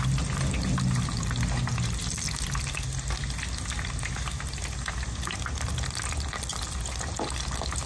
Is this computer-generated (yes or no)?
no